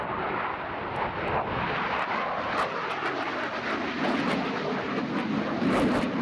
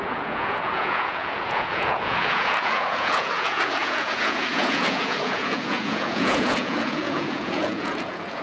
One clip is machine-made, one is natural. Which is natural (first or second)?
first